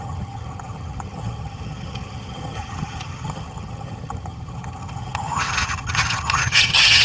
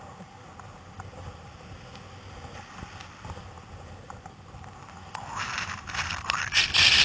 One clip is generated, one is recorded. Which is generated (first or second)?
first